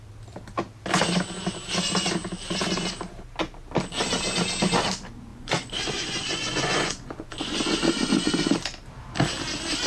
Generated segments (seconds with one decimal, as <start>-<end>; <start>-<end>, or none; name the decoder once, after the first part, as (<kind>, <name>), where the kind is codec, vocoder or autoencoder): 5.3-8.5 (vocoder, Vocos)

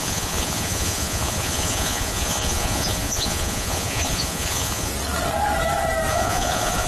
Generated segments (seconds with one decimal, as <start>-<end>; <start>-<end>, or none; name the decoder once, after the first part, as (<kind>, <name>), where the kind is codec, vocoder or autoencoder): 0.0-4.9 (vocoder, Vocos); 6.1-6.9

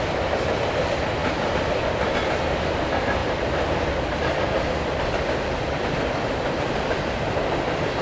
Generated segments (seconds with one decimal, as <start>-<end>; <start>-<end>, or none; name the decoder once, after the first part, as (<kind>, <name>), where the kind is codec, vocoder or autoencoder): none

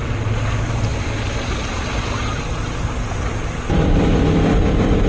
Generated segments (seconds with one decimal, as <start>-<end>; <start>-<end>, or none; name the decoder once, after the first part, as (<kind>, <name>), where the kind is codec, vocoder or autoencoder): none

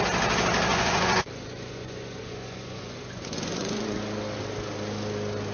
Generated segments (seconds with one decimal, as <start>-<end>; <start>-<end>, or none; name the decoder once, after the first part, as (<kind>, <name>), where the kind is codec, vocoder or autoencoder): 0.7-4.0 (vocoder, Vocos)